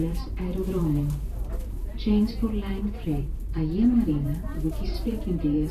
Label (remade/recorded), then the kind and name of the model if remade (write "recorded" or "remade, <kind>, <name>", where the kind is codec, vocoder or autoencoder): remade, vocoder, BigVGAN v2